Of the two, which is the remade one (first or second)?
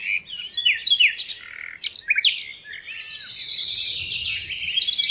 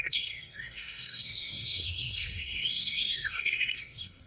second